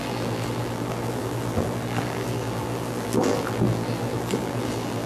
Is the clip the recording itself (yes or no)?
no